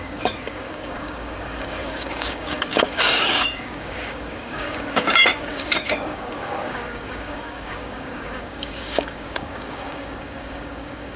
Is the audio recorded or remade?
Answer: remade